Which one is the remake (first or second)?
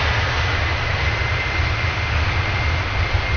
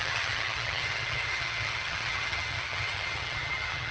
second